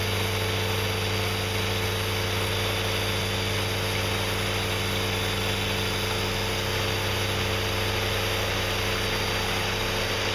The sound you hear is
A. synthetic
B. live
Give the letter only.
B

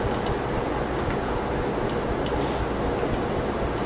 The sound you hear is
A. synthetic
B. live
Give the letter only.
B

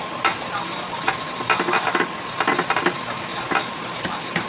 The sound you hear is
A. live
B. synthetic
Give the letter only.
A